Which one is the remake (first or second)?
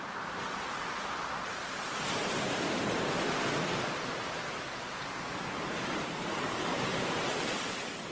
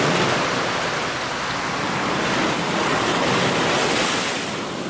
first